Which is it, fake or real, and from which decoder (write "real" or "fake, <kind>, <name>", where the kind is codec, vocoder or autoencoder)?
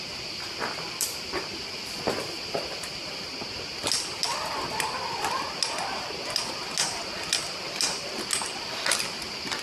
real